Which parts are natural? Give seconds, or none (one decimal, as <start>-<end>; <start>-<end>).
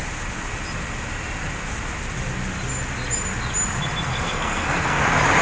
0.0-4.1; 5.0-5.4